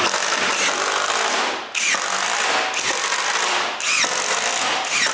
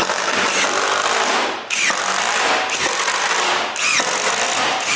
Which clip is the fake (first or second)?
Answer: second